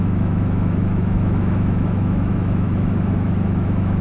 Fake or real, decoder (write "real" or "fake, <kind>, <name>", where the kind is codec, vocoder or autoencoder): fake, autoencoder, DAC-VAE